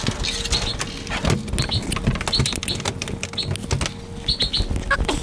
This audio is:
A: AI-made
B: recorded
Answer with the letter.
B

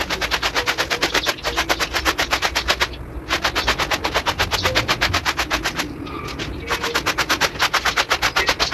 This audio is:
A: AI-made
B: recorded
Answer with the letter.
B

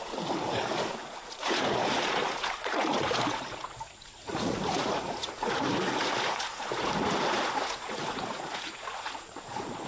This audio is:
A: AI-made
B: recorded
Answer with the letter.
A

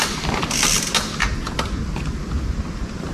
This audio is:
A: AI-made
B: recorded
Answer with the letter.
B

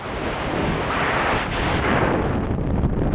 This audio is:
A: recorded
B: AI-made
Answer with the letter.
A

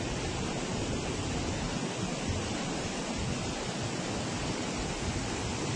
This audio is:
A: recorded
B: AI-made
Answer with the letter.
A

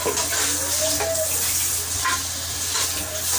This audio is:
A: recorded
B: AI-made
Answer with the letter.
A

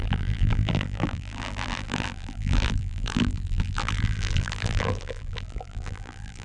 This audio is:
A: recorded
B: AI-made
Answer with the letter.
B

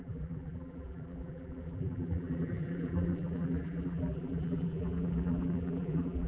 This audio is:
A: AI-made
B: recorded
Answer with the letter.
A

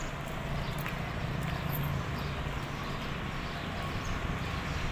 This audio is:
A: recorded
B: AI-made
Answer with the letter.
A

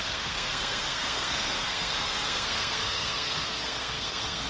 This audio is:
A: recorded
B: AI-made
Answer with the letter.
B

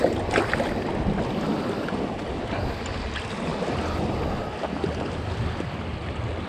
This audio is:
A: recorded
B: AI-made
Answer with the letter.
A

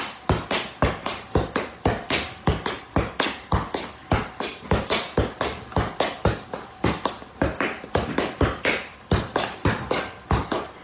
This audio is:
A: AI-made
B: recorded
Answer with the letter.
B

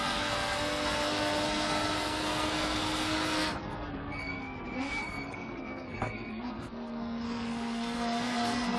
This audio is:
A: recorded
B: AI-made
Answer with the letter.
B